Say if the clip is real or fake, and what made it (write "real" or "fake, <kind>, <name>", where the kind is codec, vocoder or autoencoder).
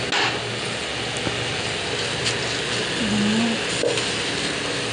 real